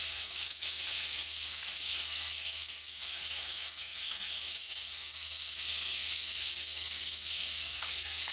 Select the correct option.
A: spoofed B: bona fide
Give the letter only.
A